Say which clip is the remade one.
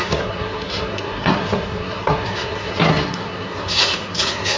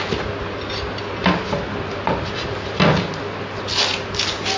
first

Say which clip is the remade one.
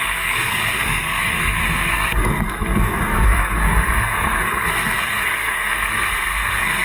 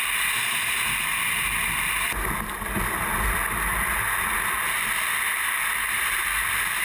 first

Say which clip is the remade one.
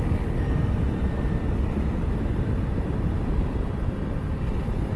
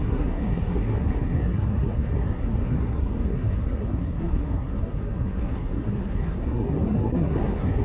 second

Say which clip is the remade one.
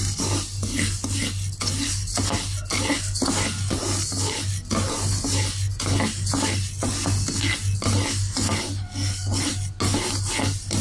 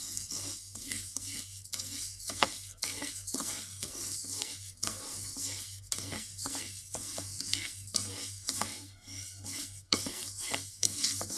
second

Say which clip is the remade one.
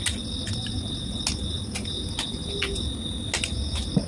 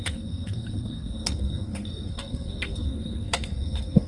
second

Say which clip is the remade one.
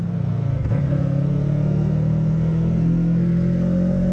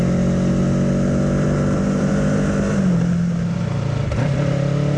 first